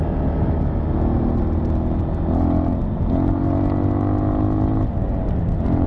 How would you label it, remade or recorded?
recorded